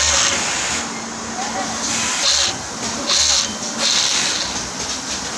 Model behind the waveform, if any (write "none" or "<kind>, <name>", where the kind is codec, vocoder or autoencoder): none